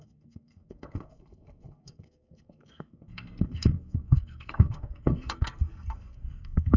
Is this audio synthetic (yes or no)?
yes